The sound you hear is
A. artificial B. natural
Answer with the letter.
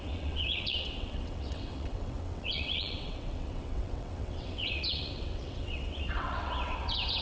A